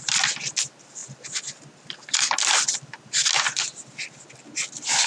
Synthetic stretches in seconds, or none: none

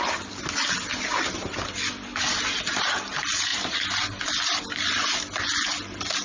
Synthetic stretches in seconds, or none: none

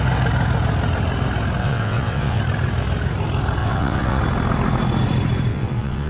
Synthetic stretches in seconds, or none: 1.6-2.4 (vocoder, WaveNeXt); 3.6-4.2; 5.5-6.1

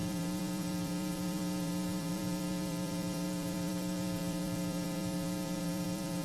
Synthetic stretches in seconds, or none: 0.0-6.2 (vocoder, BigVGAN v2)

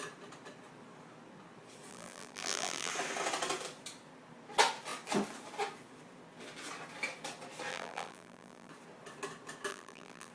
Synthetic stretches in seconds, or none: 1.9-2.9 (vocoder, BigVGAN v2); 7.7-8.7; 9.7-10.3

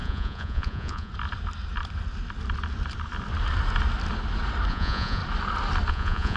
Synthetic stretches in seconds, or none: 0.0-1.1 (vocoder, Vocos); 4.7-5.2; 5.9-6.4